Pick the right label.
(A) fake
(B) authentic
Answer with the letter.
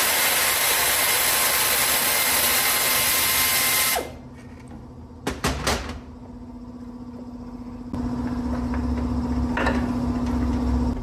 B